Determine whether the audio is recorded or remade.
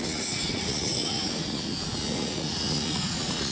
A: remade